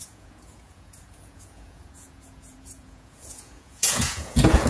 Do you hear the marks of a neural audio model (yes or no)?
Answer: yes